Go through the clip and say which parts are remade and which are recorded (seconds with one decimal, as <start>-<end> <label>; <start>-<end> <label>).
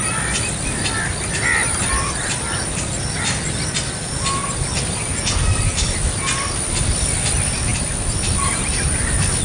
0.0-9.4 recorded